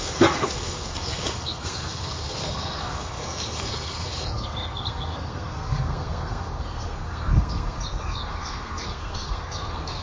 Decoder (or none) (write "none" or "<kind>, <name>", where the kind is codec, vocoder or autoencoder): codec, SNAC